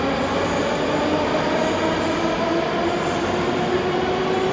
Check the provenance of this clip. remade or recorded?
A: recorded